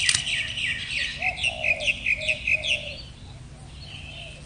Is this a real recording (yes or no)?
yes